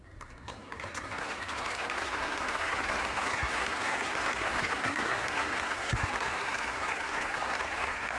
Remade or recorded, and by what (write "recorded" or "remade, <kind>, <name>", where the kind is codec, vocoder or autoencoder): remade, codec, SNAC